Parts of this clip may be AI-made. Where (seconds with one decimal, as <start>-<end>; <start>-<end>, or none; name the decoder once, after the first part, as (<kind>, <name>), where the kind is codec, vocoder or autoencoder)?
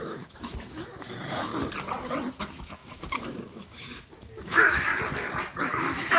0.0-1.5 (autoencoder, DAC-VAE); 2.4-4.9; 5.6-6.2